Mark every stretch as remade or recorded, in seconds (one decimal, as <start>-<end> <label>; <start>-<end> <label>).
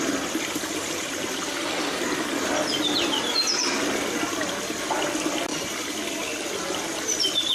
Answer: 0.0-7.5 recorded